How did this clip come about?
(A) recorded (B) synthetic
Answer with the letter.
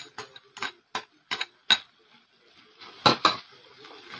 A